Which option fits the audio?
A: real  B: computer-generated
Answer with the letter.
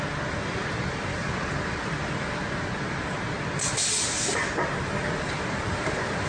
A